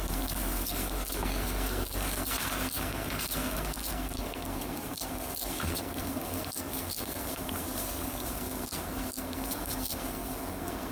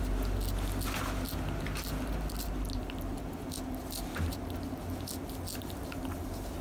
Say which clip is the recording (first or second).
second